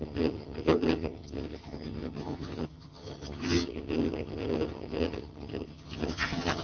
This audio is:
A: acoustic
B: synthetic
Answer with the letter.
B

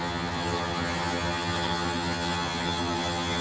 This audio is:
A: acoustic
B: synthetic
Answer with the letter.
B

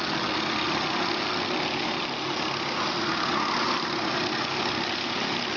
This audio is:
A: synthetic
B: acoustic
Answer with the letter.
B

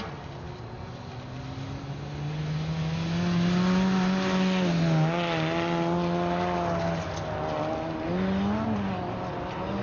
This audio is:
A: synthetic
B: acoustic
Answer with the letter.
B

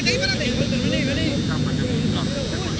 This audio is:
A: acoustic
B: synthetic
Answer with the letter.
A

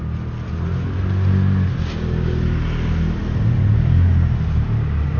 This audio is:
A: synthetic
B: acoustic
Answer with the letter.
B